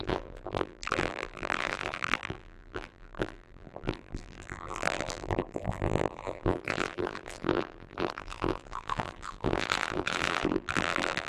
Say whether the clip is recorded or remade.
remade